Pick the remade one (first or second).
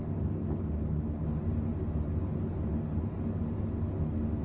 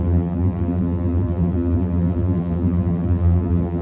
second